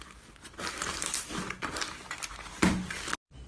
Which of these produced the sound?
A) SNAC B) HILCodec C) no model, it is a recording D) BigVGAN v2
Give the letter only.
C